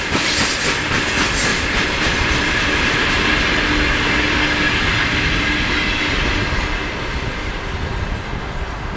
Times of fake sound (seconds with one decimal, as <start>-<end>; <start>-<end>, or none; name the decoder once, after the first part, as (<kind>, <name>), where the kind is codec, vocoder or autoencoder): 1.5-2.9 (vocoder, BigVGAN v2)